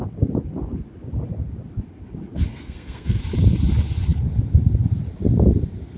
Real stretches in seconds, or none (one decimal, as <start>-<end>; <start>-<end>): 0.0-2.5; 3.2-6.0